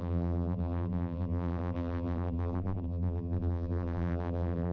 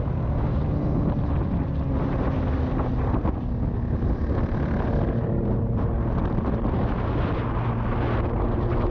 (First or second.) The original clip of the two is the second